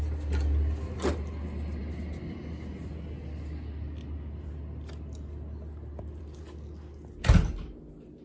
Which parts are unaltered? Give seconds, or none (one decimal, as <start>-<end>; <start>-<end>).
0.0-8.2